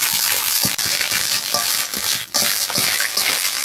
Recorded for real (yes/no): no